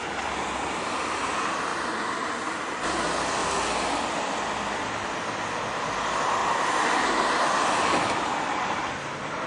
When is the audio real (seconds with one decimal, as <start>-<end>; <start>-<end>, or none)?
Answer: 3.4-5.8; 6.4-8.1